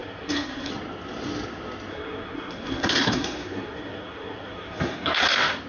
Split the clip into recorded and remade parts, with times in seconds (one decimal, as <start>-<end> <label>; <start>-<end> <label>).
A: 0.0-0.7 remade; 0.7-1.9 recorded; 1.9-5.3 remade; 5.3-5.7 recorded